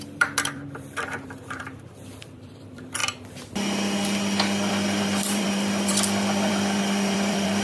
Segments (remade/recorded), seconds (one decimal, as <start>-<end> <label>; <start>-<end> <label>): 0.0-3.0 remade; 3.0-4.7 recorded; 4.7-7.6 remade